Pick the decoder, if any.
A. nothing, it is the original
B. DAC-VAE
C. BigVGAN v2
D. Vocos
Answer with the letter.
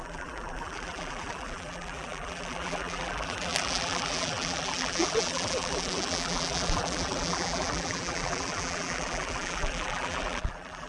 C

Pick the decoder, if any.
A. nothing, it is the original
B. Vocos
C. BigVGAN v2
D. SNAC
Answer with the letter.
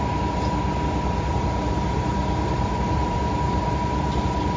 C